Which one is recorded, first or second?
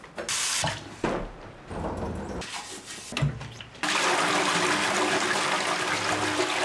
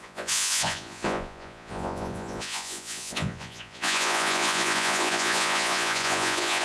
first